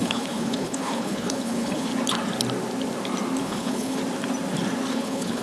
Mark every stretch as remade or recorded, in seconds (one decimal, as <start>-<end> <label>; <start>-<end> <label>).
0.0-1.9 remade; 1.9-3.4 recorded; 3.4-4.0 remade; 4.0-4.9 recorded; 4.9-5.4 remade